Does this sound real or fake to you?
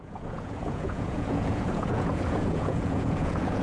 fake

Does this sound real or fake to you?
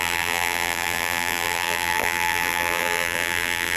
fake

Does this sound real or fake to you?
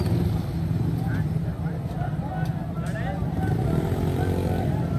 real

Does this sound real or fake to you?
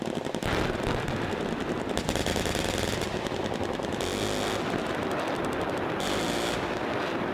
real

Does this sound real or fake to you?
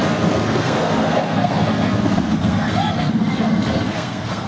fake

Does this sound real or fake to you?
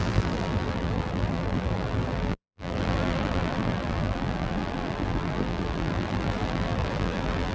fake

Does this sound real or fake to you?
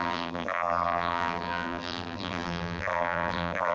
fake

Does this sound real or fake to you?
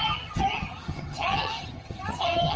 fake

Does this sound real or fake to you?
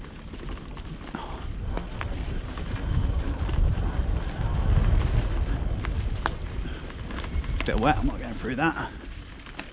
real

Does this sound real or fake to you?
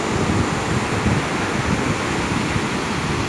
real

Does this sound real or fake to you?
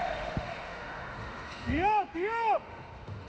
fake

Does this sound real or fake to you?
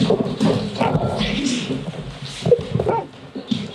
real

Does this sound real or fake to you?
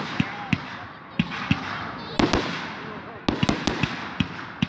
real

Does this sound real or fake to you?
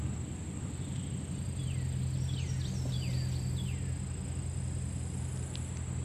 real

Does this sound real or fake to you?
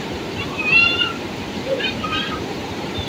fake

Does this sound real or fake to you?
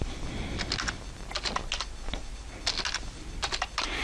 real